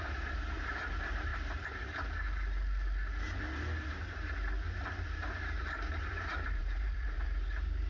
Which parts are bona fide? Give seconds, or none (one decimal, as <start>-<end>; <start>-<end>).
1.3-5.0